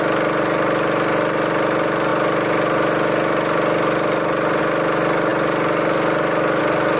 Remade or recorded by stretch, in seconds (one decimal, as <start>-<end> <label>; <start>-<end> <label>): 0.0-7.0 recorded